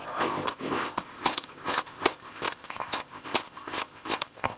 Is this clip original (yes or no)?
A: no